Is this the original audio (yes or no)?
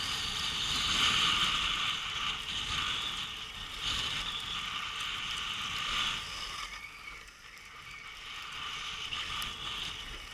yes